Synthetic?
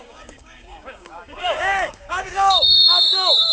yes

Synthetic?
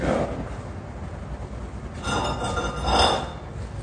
no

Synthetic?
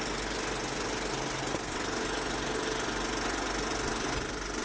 no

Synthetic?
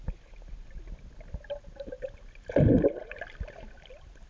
no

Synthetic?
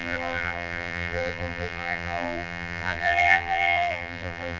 yes